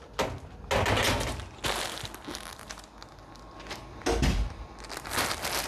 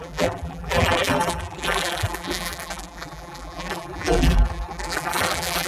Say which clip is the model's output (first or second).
second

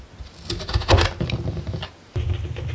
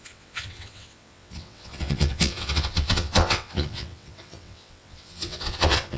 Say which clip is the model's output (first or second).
second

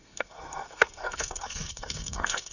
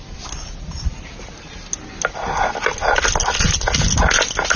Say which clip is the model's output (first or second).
first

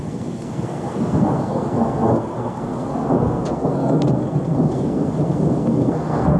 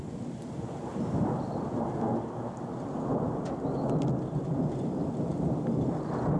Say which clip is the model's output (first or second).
first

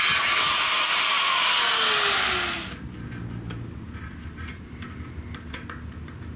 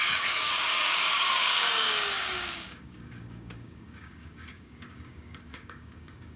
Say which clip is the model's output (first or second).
second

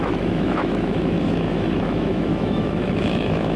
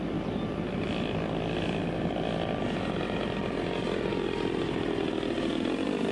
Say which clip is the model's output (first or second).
first